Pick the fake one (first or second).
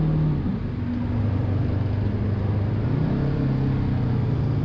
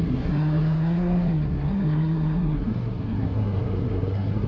second